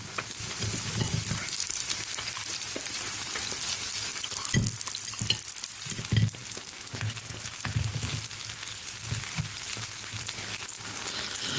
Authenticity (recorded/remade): recorded